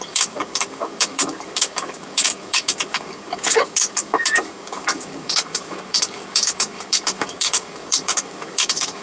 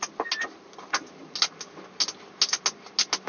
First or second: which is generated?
first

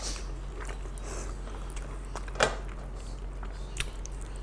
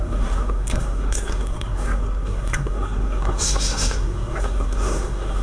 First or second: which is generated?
second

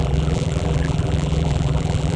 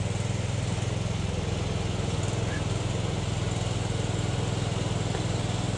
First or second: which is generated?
first